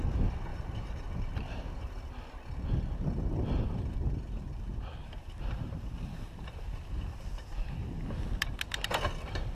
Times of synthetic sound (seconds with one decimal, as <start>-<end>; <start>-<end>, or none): 0.5-2.1; 5.0-7.7